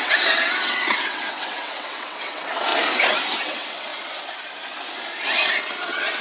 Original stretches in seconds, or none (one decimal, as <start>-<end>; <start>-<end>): 2.7-3.4; 3.9-5.8